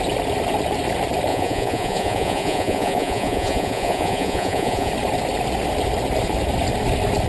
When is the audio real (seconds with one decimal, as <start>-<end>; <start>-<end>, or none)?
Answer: 0.0-1.3; 4.9-7.3